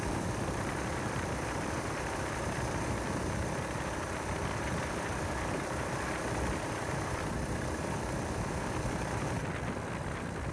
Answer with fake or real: fake